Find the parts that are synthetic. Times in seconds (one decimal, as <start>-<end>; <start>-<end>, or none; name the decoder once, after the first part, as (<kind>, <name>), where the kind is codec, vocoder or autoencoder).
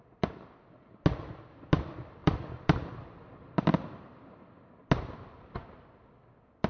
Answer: 2.2-4.7 (vocoder, BigVGAN v2)